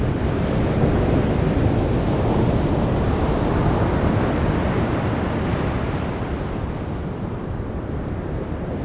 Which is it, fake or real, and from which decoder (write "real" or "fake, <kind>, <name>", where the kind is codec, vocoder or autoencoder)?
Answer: real